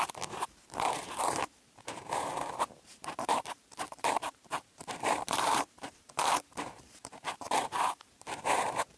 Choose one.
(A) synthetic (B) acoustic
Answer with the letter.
A